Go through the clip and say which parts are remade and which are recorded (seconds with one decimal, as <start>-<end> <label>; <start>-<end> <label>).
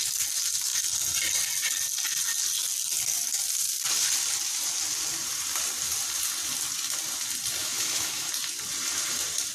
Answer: 0.0-7.6 recorded; 7.6-8.3 remade; 8.3-9.5 recorded